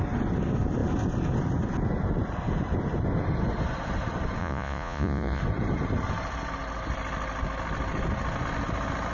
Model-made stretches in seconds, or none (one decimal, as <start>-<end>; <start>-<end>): 4.4-5.4